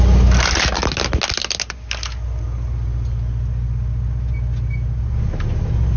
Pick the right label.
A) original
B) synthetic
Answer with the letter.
A